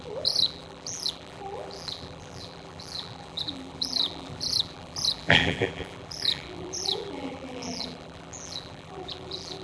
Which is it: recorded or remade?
remade